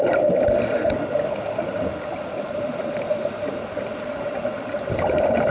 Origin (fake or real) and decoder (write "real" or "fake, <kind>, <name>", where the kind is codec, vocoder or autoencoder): real